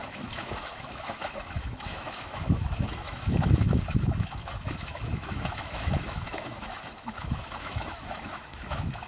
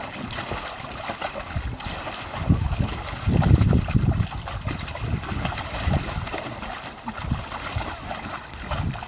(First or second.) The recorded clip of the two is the second